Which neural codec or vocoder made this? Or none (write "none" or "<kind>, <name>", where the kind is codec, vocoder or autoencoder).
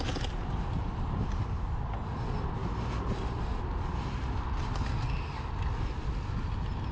none